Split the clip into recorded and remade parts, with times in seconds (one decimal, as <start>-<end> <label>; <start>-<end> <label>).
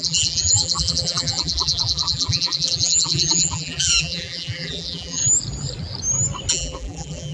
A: 0.0-5.2 remade; 5.2-6.5 recorded; 6.5-7.3 remade